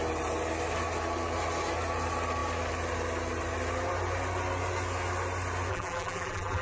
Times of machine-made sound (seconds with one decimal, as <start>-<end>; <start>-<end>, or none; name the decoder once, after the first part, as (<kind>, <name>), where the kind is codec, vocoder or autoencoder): 5.7-6.6 (vocoder, BigVGAN v2)